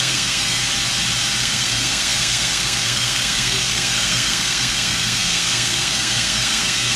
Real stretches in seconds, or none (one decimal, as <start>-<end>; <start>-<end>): 0.6-1.4